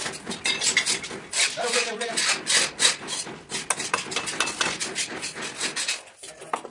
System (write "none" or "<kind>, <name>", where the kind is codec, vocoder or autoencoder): none